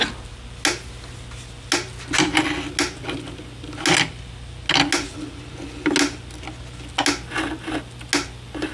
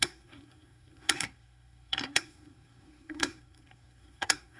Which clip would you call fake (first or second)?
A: second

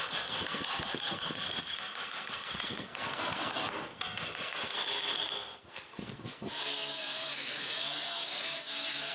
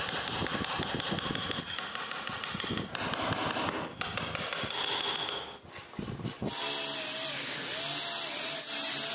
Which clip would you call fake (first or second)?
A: first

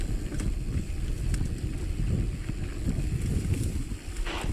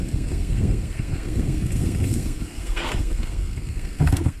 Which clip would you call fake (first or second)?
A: second